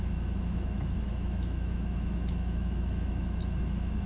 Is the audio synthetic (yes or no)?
yes